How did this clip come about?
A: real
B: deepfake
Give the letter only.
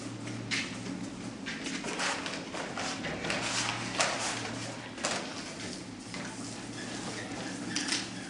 A